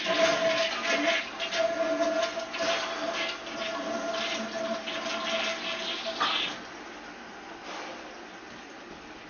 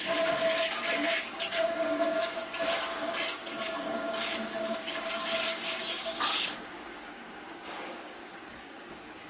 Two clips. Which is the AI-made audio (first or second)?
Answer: second